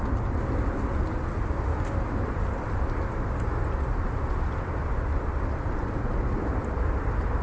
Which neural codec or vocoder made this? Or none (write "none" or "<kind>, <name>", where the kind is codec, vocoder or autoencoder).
none